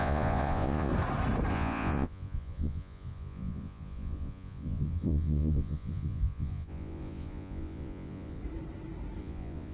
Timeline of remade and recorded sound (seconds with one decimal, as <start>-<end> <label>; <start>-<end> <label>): 0.0-0.9 remade; 0.9-1.5 recorded; 1.5-8.4 remade; 8.4-9.2 recorded; 9.2-9.7 remade